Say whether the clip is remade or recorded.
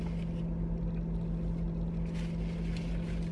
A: recorded